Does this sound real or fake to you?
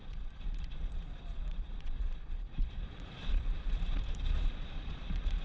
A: fake